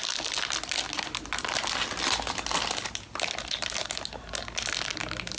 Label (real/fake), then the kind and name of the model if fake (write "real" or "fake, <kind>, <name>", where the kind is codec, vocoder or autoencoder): real